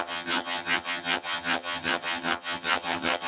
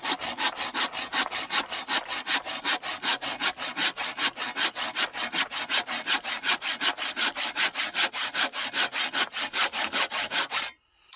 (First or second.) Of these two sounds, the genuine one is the second